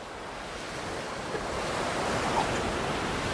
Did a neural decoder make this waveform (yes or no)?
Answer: no